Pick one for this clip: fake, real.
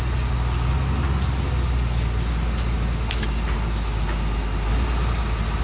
real